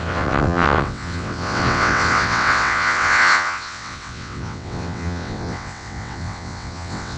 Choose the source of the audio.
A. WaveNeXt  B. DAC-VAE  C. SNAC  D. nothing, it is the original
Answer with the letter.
A